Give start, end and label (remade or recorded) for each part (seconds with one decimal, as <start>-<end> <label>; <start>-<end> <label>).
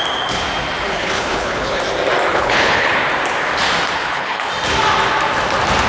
0.0-0.9 recorded; 0.9-1.8 remade; 1.8-2.3 recorded; 2.3-2.9 remade; 2.9-4.0 recorded; 4.0-4.5 remade; 4.5-5.9 recorded